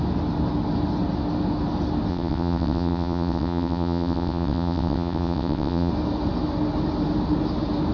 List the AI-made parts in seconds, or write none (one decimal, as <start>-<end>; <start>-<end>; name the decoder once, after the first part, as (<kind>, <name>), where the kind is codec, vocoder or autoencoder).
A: 2.1-5.9 (vocoder, WaveNeXt)